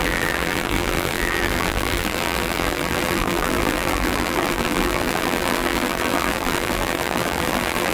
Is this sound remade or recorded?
remade